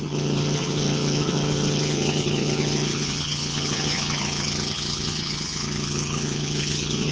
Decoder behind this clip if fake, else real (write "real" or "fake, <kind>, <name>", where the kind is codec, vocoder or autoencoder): fake, vocoder, HiFi-GAN